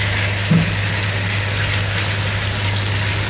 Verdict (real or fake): real